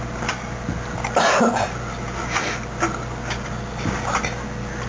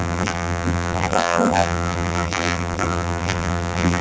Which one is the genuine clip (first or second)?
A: first